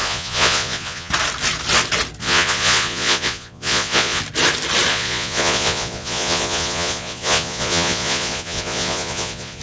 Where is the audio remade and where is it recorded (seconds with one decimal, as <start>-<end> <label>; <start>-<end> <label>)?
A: 0.0-1.1 remade; 1.1-2.2 recorded; 2.2-4.2 remade; 4.2-4.9 recorded; 4.9-9.6 remade